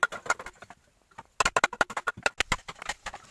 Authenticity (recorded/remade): recorded